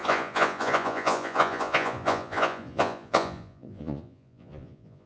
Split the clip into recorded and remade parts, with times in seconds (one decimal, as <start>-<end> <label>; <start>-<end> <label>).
0.0-5.1 remade